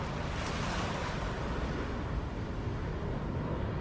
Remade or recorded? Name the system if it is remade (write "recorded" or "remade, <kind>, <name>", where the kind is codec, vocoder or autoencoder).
recorded